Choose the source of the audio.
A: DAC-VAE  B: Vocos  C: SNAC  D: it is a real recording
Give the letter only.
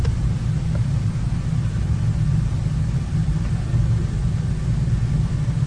D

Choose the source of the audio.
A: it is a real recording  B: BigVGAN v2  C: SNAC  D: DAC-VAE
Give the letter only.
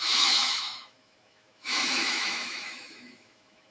D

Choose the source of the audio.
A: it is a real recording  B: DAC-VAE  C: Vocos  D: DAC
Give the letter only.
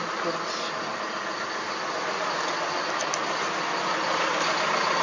A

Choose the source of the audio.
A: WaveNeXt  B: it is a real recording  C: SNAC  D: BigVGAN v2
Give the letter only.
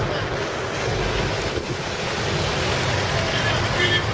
B